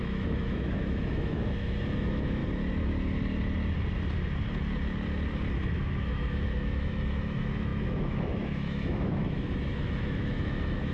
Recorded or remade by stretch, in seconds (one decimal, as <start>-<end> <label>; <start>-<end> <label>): 0.0-2.4 remade; 2.4-5.8 recorded; 5.8-10.9 remade